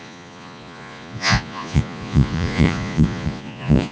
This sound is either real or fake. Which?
fake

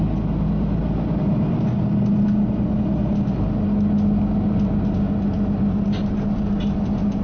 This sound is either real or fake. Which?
real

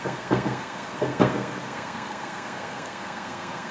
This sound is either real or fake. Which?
fake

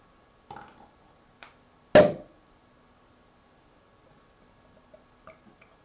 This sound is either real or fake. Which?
real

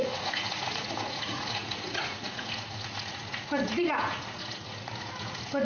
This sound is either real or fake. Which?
fake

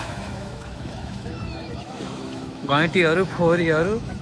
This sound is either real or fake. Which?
fake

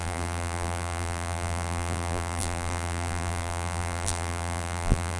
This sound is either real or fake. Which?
fake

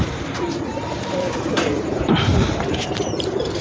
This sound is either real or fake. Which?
fake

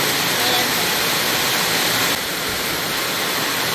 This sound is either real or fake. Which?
real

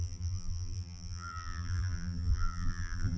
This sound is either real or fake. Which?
fake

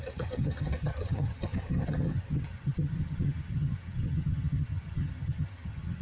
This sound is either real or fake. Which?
fake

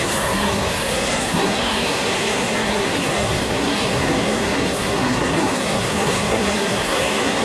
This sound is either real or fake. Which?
fake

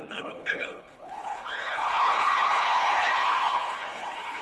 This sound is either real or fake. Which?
fake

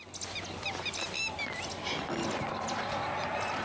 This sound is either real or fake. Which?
real